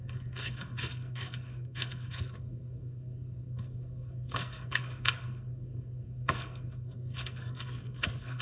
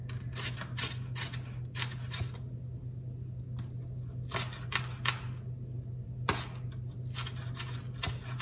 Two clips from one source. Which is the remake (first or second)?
first